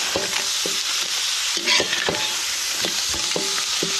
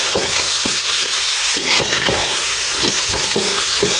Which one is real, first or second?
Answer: first